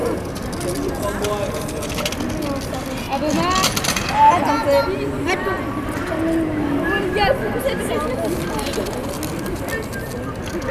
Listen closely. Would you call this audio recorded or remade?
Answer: recorded